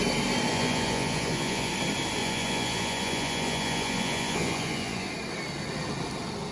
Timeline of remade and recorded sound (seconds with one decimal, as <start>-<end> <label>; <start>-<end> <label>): 0.0-0.5 recorded; 0.5-1.7 remade; 1.7-2.2 recorded; 2.2-5.1 remade; 5.1-6.5 recorded